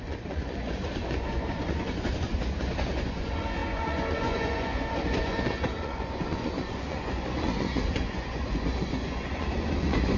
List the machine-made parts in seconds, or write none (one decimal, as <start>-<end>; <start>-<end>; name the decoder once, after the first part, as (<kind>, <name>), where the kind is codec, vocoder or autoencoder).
0.0-10.2 (vocoder, Vocos)